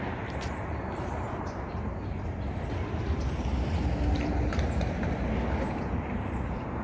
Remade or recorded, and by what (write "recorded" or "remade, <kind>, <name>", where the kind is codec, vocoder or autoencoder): remade, vocoder, BigVGAN v2